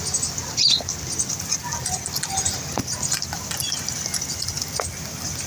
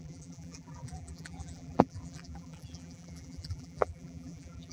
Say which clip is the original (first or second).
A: first